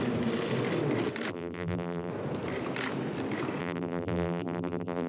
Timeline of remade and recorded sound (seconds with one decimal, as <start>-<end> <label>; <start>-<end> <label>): 0.0-1.3 recorded; 1.3-2.1 remade; 2.1-3.6 recorded; 3.6-5.1 remade